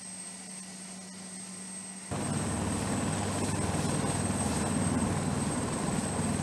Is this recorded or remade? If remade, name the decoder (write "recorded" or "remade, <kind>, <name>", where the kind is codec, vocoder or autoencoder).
recorded